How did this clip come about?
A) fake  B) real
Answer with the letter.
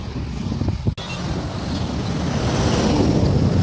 B